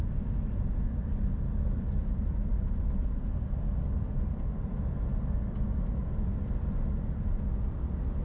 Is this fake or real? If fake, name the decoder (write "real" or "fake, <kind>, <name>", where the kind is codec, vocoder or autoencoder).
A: real